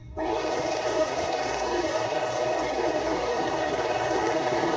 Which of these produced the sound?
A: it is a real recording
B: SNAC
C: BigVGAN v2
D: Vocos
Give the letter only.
B